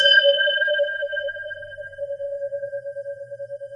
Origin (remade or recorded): remade